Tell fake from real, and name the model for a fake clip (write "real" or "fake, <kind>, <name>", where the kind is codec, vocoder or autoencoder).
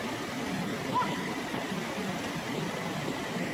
real